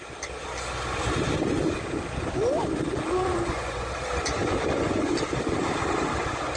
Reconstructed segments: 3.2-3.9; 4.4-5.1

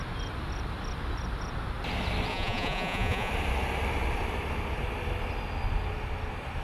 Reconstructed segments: 2.3-3.3

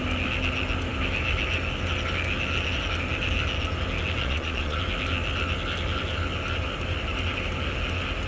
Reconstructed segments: 4.2-4.8

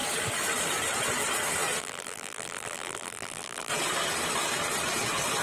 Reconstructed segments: 1.8-3.7

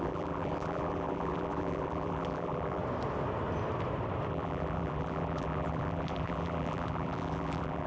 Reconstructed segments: 0.0-2.8; 4.3-7.9

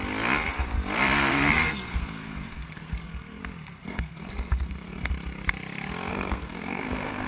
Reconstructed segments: 1.3-3.4; 3.8-5.1; 6.1-7.3

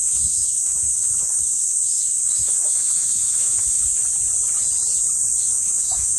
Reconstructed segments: 0.0-4.0; 5.4-6.2